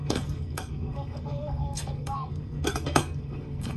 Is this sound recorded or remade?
remade